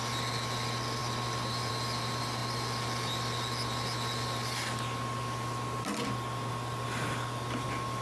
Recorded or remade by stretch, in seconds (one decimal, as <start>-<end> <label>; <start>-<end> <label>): 0.0-8.0 recorded